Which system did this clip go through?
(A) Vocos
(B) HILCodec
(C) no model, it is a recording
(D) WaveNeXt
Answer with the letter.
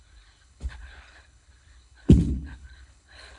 B